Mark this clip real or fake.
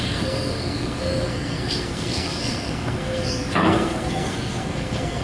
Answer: fake